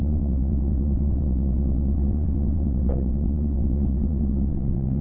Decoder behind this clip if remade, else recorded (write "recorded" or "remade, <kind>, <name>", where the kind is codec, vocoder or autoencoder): remade, vocoder, WaveNeXt